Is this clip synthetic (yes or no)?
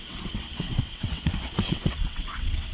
yes